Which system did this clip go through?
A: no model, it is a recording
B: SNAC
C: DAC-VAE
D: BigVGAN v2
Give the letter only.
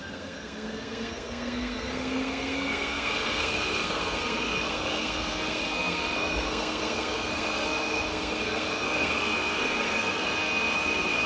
B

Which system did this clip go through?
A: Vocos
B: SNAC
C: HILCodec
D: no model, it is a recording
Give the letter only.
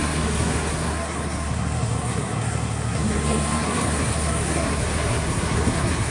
B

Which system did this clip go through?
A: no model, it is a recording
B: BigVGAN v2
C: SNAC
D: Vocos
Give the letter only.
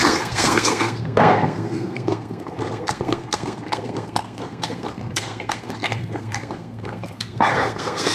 C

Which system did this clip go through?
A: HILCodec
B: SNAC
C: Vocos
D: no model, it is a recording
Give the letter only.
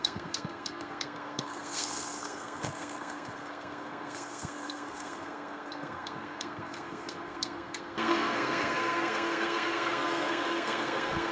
B